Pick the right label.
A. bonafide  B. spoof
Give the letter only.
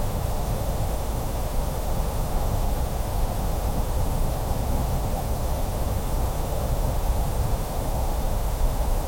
B